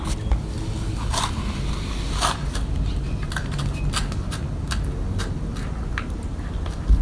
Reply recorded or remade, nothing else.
recorded